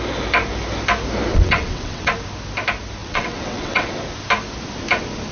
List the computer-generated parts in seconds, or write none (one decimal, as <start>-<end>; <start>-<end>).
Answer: 1.3-2.1; 3.0-3.9